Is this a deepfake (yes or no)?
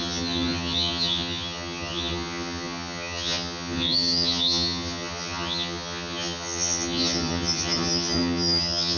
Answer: yes